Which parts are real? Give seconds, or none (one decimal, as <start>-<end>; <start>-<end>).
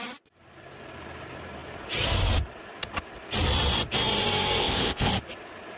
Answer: 0.0-4.6; 5.1-5.8